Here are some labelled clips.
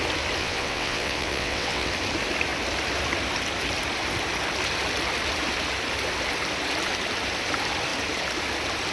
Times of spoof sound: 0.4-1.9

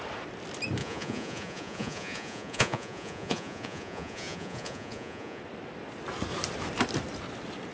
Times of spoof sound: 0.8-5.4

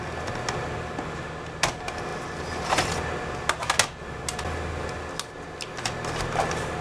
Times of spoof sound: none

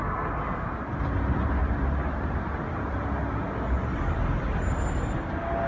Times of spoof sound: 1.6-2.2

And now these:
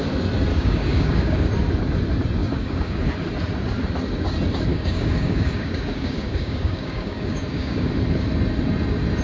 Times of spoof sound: 0.5-1.5; 2.4-3.0; 4.7-7.9